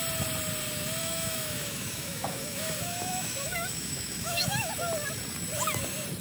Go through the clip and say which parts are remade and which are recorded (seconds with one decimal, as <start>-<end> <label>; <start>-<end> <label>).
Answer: 0.0-1.0 recorded; 1.0-4.7 remade; 4.7-6.2 recorded